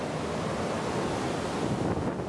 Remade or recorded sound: recorded